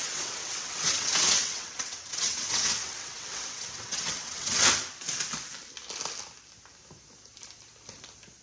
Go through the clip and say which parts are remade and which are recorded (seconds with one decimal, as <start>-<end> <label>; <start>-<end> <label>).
0.0-4.7 remade; 4.7-8.4 recorded